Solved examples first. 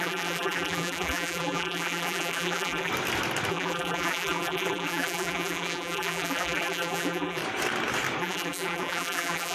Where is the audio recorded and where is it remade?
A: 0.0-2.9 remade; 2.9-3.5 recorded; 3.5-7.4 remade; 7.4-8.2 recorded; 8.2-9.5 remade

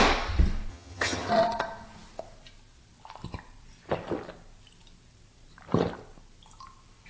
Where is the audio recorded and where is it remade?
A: 0.0-0.7 recorded; 0.7-1.3 remade; 1.3-7.1 recorded

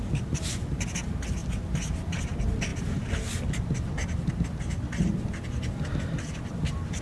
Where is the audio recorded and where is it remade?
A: 0.0-7.0 recorded

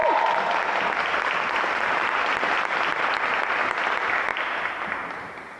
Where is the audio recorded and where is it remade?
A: 0.0-5.6 recorded